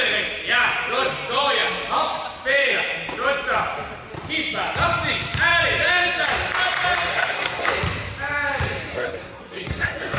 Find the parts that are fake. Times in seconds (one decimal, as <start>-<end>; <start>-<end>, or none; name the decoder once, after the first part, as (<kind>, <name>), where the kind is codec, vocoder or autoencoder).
7.1-7.7 (codec, SNAC); 8.9-10.2